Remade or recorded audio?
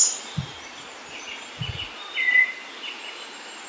remade